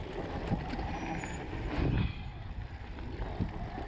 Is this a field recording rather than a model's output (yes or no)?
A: yes